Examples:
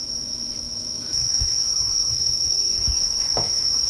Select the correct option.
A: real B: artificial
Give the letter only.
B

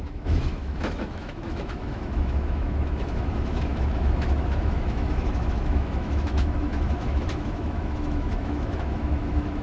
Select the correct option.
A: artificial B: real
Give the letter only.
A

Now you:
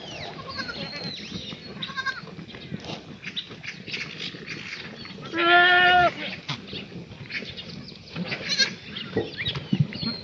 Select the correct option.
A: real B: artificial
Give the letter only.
A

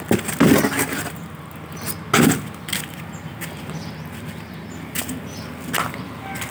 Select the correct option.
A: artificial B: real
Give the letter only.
B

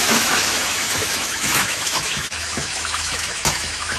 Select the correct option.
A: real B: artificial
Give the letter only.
B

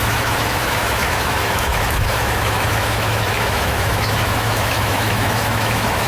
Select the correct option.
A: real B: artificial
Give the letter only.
B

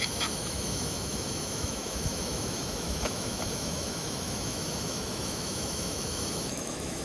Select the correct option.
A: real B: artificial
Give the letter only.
B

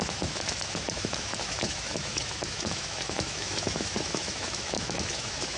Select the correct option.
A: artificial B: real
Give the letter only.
A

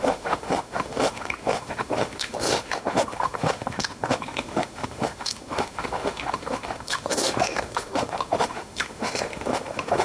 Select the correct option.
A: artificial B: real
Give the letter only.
A